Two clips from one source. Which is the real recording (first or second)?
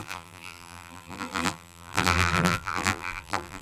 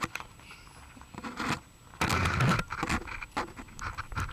second